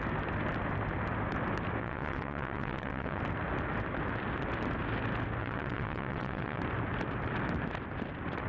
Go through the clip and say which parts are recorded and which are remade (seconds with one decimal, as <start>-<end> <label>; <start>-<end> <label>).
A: 0.0-1.8 recorded; 1.8-3.2 remade; 3.2-5.4 recorded; 5.4-6.6 remade; 6.6-8.5 recorded